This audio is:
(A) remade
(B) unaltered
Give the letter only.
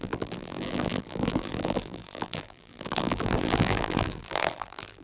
A